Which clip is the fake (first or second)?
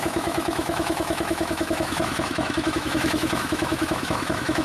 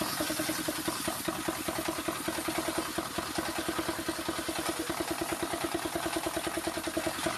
first